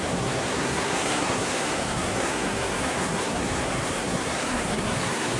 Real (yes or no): no